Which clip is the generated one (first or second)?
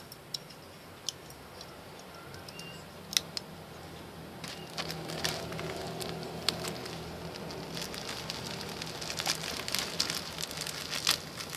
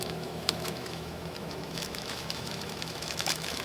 second